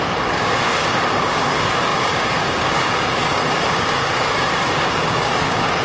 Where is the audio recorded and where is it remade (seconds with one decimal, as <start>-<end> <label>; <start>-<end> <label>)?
0.0-5.8 remade